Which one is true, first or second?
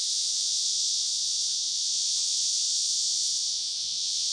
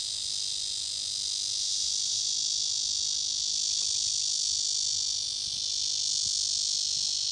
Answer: second